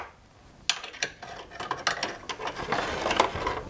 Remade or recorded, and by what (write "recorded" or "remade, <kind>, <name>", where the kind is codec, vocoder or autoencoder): recorded